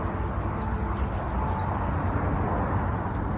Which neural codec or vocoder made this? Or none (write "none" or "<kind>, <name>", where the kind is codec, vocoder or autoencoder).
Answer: none